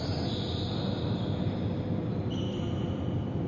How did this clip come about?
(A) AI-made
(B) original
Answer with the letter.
B